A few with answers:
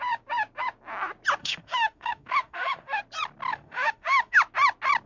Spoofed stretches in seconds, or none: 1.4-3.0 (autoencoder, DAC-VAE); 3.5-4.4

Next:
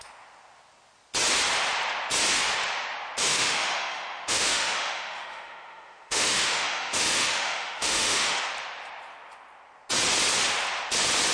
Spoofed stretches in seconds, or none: 3.2-8.4 (autoencoder, DAC-VAE)

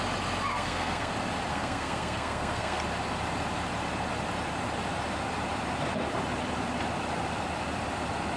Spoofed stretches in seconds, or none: 0.5-1.1 (codec, SNAC); 1.5-2.8

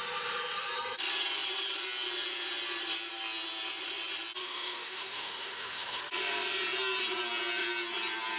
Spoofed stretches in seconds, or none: 4.4-6.0 (autoencoder, DAC-VAE)

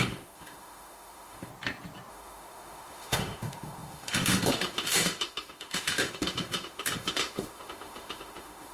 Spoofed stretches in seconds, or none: 0.0-1.5 (autoencoder, DAC-VAE); 2.1-8.7

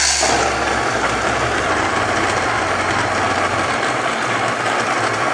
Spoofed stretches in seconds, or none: none

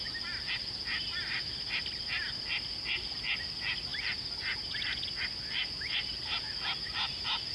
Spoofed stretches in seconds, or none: none

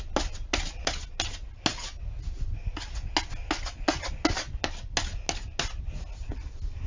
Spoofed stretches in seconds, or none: none